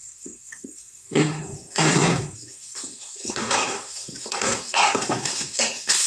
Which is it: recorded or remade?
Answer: remade